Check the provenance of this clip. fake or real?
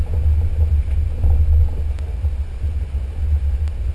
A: real